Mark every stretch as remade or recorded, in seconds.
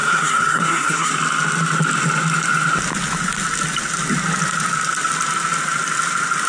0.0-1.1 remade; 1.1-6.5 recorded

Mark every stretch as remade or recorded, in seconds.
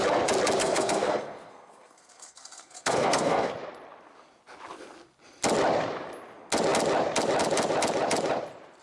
0.0-0.6 recorded; 0.6-3.5 remade; 3.5-8.8 recorded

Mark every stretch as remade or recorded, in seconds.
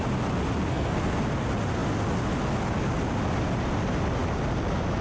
0.0-0.7 recorded; 0.7-1.2 remade; 1.2-5.0 recorded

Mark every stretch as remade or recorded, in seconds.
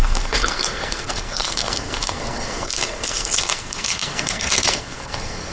0.0-5.5 remade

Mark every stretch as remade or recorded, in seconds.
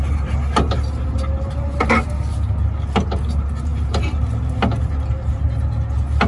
0.0-6.3 recorded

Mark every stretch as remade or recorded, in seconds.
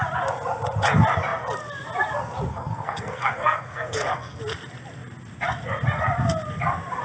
0.0-2.5 recorded; 2.5-4.4 remade; 4.4-7.0 recorded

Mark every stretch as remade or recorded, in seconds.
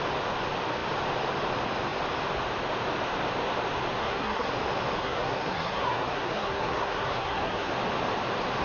0.0-4.0 recorded; 4.0-4.5 remade; 4.5-5.0 recorded; 5.0-7.7 remade; 7.7-8.6 recorded